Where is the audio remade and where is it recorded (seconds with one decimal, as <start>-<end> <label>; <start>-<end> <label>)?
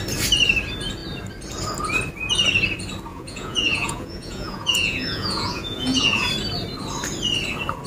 0.0-3.1 recorded; 3.1-6.3 remade; 6.3-7.9 recorded